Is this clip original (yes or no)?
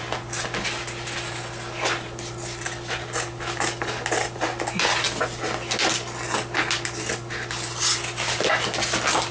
yes